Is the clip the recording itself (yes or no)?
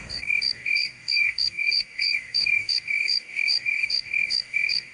no